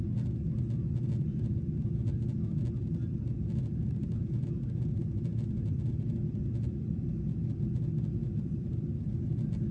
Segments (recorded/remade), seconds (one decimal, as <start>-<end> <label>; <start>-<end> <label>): 0.0-9.7 recorded